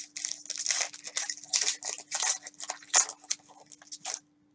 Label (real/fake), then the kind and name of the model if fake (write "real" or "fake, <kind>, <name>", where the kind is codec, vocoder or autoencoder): real